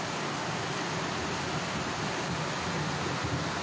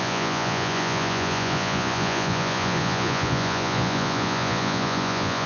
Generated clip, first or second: second